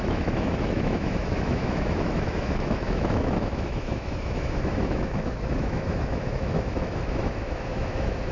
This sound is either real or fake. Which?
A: fake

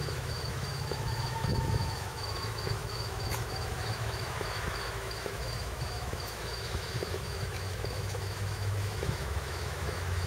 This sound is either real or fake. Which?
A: fake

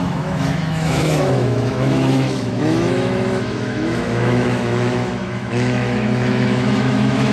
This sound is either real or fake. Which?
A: fake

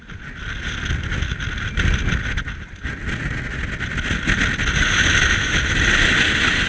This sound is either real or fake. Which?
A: real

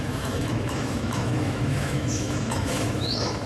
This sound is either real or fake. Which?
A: fake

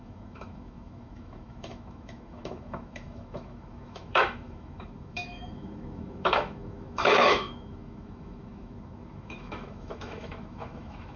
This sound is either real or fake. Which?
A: fake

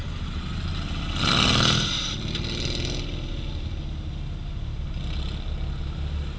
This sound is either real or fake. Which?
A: real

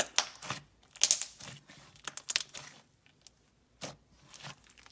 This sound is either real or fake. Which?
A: real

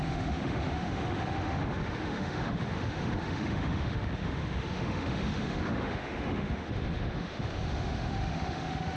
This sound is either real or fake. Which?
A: fake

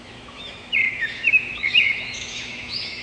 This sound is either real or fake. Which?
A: fake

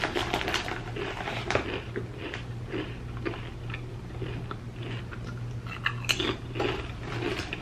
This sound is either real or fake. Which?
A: real